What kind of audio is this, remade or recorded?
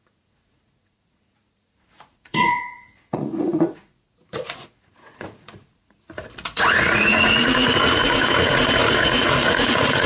remade